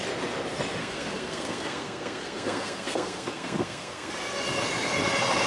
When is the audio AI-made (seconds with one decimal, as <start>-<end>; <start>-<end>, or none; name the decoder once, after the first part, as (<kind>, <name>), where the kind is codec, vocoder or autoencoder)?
0.8-4.1 (codec, SNAC)

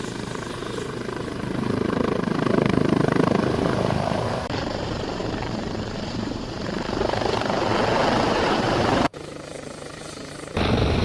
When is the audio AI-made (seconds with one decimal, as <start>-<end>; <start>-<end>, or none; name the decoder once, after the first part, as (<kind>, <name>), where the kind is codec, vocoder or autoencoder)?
0.0-7.7 (vocoder, BigVGAN v2); 8.2-9.1; 10.3-11.0

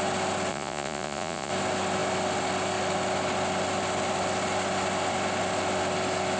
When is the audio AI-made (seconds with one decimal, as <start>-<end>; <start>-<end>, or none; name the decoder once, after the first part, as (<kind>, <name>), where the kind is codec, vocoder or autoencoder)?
0.5-1.5 (vocoder, Vocos)

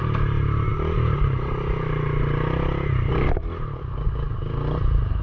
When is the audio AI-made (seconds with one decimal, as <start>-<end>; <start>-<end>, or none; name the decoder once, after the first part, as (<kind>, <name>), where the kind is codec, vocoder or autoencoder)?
none

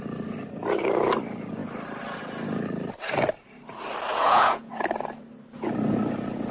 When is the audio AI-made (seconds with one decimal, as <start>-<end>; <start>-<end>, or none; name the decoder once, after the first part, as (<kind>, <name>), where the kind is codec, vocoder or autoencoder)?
4.1-4.7 (vocoder, Vocos)